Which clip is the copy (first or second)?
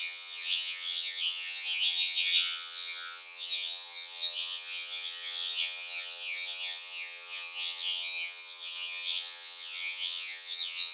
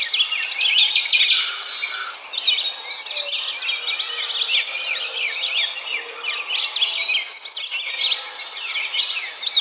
first